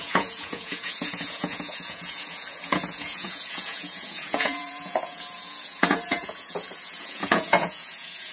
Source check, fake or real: fake